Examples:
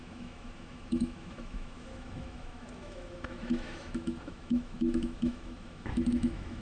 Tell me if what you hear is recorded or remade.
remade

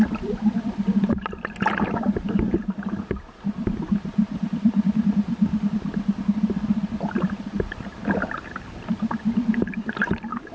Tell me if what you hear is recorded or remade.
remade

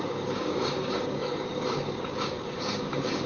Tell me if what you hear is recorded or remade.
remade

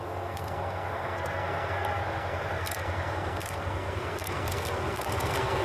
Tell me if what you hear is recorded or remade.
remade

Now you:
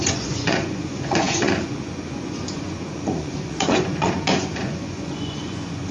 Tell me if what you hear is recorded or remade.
remade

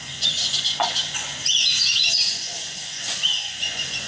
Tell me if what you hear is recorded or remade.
remade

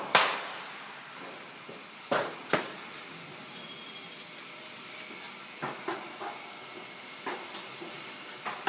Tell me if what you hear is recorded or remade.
recorded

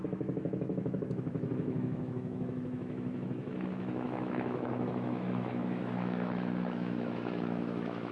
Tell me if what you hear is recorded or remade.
remade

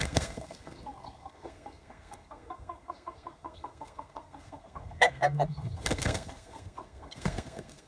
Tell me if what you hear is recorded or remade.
remade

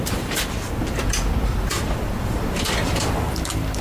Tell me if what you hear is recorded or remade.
remade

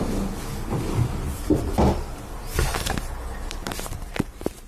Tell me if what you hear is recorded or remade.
remade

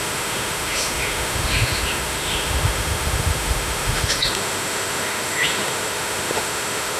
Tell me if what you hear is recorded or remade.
remade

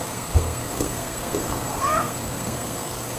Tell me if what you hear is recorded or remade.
remade